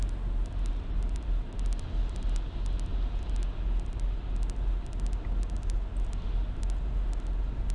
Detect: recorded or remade recorded